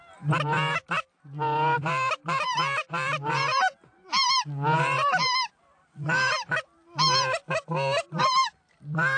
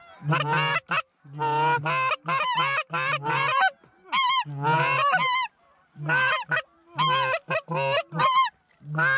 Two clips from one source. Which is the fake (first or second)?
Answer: first